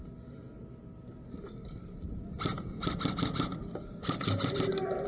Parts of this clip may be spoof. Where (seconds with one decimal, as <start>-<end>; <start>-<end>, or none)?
none